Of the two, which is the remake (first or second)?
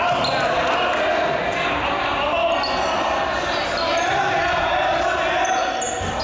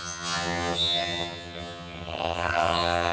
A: second